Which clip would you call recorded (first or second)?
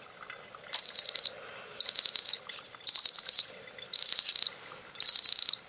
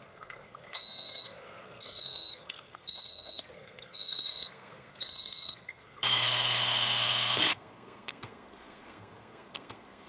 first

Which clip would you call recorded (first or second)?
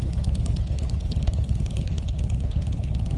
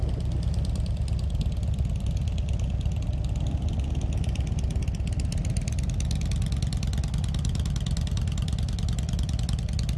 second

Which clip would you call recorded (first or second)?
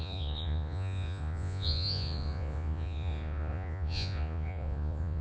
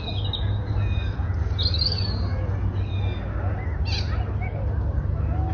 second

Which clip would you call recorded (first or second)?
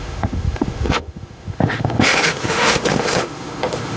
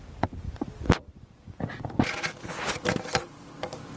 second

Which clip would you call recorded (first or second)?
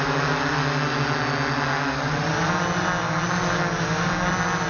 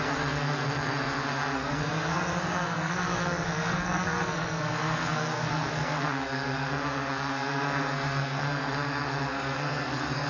first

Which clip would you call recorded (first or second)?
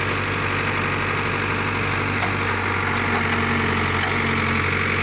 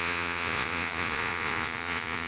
first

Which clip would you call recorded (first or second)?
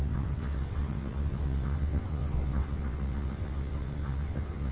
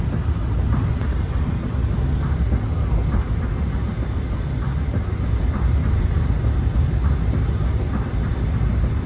second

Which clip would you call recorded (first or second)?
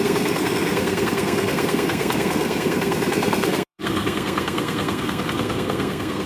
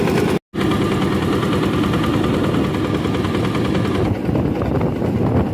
second